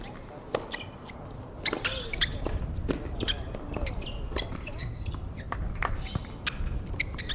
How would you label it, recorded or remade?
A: recorded